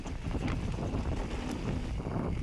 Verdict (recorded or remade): recorded